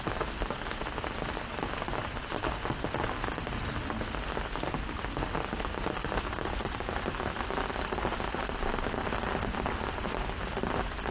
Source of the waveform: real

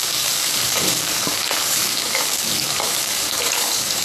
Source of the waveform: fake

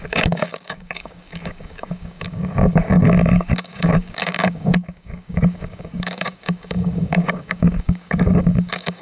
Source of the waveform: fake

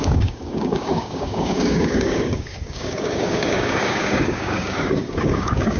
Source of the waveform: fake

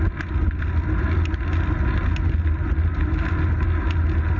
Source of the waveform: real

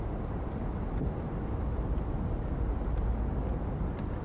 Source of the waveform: real